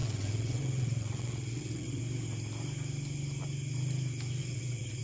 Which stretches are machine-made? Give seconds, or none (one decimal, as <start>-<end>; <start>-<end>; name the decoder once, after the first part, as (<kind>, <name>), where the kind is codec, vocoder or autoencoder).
0.0-2.0 (vocoder, WaveNeXt); 4.4-5.0